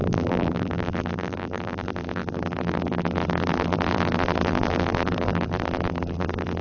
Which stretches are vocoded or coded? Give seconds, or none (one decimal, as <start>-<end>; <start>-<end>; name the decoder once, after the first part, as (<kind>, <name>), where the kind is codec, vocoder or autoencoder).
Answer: 0.0-6.6 (vocoder, BigVGAN v2)